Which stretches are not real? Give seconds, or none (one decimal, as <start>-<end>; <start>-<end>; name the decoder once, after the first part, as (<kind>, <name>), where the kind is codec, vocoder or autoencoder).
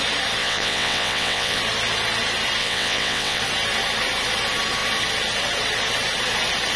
0.4-1.6 (vocoder, WaveNeXt); 2.6-3.4